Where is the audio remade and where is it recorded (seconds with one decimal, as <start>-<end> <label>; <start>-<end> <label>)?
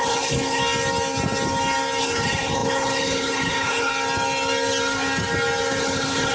0.0-0.6 remade; 0.6-2.0 recorded; 2.0-3.9 remade; 3.9-5.8 recorded; 5.8-6.3 remade